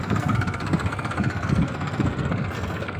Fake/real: fake